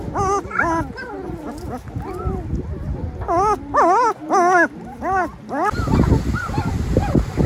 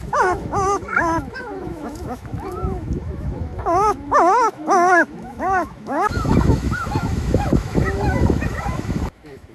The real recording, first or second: first